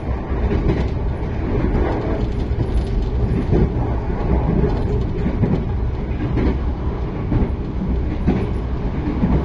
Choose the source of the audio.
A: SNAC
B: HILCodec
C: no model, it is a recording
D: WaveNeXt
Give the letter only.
C